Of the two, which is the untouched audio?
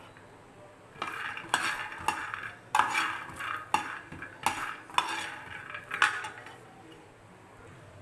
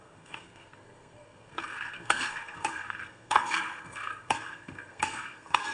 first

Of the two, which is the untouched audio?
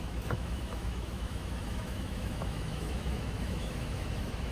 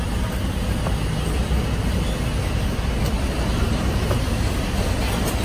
second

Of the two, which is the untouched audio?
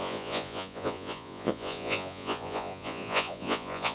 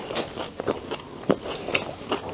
second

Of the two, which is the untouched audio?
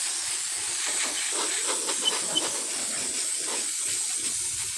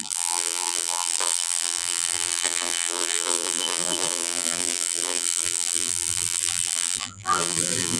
first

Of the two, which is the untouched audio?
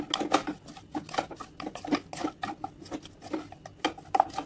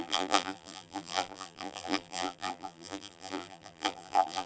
first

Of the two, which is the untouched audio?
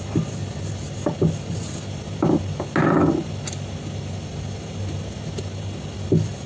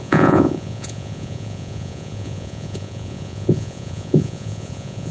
first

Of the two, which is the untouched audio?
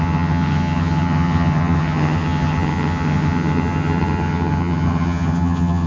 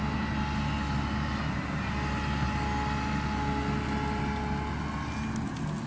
second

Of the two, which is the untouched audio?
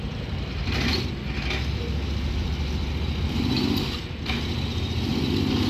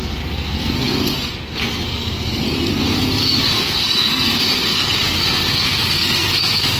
first